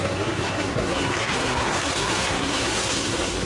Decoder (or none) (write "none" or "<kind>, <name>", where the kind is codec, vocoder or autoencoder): codec, SNAC